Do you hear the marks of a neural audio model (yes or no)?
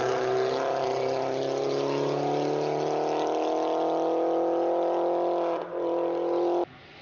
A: no